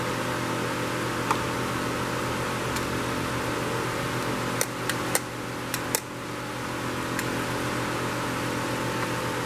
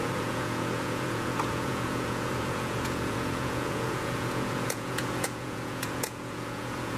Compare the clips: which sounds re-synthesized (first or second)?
second